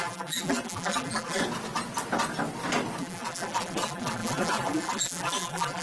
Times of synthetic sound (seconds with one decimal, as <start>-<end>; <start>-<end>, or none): 0.0-1.4; 3.0-5.8